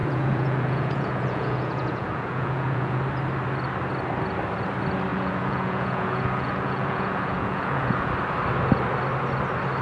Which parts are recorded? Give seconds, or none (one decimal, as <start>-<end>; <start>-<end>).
3.0-5.1; 8.1-9.8